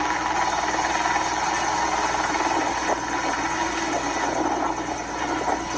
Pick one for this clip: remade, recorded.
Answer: recorded